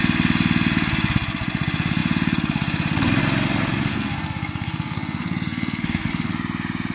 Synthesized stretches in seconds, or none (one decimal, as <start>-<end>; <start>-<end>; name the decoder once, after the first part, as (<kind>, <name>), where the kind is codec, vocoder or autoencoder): 3.9-6.1 (codec, SNAC)